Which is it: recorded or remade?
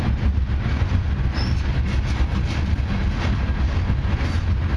recorded